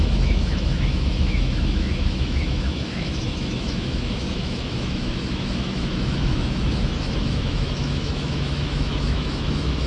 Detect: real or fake fake